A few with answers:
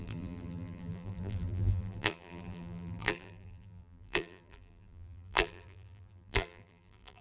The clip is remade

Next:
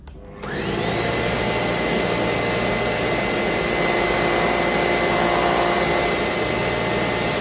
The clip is recorded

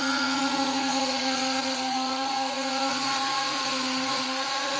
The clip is remade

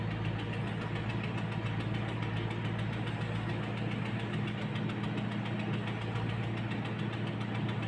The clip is recorded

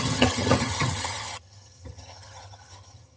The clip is remade